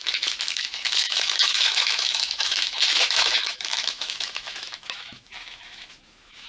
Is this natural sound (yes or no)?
no